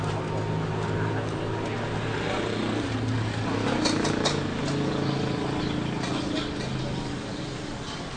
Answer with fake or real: real